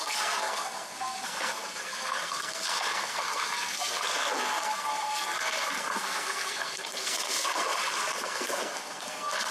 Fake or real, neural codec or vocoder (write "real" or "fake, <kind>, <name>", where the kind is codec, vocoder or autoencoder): fake, codec, SNAC